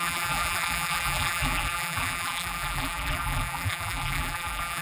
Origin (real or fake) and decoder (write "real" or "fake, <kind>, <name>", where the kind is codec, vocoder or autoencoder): fake, vocoder, BigVGAN v2